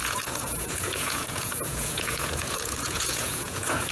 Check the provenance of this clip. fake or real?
fake